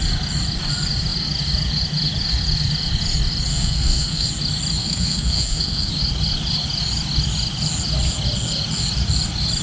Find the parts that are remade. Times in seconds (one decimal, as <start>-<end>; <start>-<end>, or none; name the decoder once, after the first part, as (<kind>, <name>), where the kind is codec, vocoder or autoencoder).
3.5-4.3 (codec, SNAC); 4.8-5.9